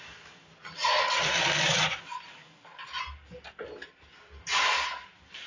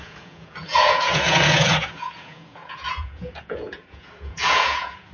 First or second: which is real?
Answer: first